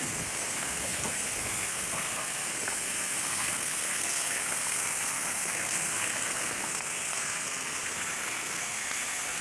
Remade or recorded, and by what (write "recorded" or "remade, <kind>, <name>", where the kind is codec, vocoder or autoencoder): remade, codec, SNAC